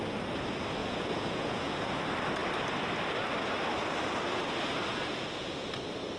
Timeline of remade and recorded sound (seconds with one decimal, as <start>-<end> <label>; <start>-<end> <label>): 0.0-0.8 recorded; 0.8-2.0 remade; 2.0-4.9 recorded; 4.9-5.7 remade; 5.7-6.2 recorded